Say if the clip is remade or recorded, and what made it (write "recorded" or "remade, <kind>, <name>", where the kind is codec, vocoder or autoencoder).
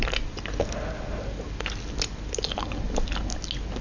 recorded